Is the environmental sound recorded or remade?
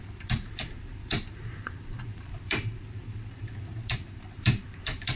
remade